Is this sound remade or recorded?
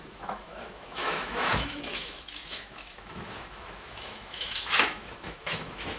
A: remade